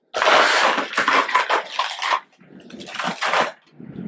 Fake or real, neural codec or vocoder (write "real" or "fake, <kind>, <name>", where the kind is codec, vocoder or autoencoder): real